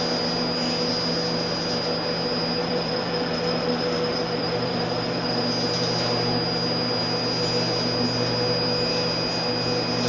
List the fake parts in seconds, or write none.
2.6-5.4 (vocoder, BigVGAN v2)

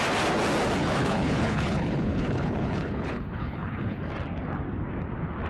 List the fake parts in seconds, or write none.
0.8-4.1 (codec, HILCodec)

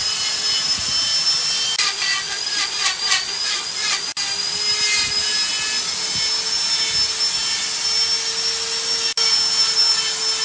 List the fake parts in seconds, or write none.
none